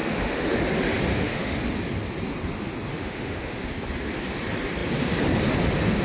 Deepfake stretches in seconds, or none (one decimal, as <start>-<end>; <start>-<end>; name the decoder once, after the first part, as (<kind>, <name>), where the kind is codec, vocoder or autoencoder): 0.0-0.6 (autoencoder, DAC-VAE); 1.1-1.6; 2.9-3.7